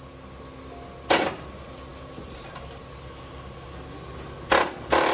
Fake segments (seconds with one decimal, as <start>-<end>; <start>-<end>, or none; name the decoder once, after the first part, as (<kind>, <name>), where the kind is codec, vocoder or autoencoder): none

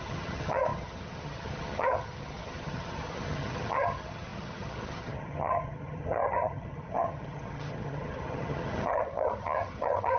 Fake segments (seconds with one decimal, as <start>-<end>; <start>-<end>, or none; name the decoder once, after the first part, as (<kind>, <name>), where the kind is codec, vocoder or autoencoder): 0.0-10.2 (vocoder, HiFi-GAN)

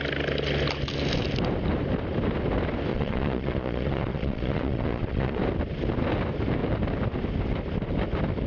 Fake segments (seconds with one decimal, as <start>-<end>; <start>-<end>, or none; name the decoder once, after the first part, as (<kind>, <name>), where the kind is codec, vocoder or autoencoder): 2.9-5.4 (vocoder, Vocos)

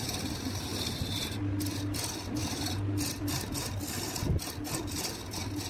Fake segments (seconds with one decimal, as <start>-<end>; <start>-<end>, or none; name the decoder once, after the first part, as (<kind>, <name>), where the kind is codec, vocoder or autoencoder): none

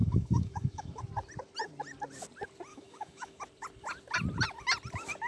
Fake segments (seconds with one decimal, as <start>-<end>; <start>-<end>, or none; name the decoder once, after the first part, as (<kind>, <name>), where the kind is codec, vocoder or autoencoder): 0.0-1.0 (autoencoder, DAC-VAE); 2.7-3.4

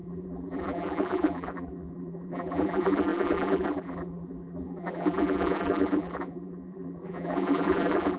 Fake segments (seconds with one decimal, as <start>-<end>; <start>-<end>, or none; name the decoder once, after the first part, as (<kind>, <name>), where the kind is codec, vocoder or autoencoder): 0.0-8.2 (vocoder, BigVGAN v2)